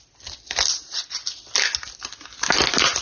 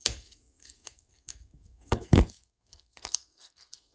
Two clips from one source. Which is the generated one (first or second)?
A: second